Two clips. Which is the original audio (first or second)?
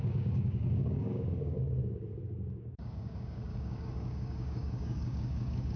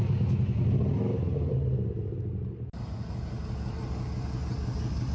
second